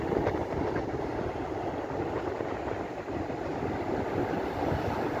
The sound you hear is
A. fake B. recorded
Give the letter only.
B